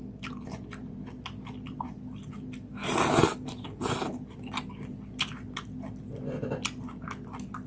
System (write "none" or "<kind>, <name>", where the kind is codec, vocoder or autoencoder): none